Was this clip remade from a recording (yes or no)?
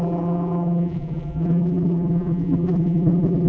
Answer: yes